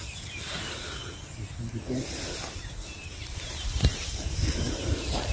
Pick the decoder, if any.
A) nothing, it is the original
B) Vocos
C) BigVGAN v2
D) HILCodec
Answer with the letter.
A